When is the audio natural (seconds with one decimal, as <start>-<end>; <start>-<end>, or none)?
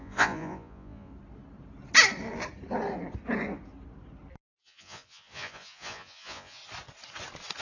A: 1.1-4.6; 6.6-7.6